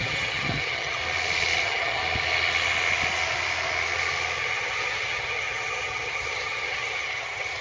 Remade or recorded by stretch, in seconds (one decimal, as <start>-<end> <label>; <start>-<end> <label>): 0.0-1.0 remade; 1.0-1.6 recorded; 1.6-2.0 remade; 2.0-4.4 recorded; 4.4-7.6 remade